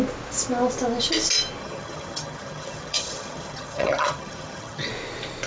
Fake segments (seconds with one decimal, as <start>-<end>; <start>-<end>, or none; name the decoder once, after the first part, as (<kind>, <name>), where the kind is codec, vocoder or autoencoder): 1.6-4.9 (vocoder, HiFi-GAN)